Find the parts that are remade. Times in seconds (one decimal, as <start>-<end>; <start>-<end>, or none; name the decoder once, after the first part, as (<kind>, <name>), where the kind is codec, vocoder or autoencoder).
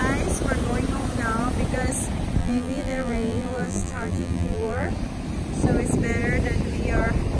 2.4-4.9 (vocoder, BigVGAN v2)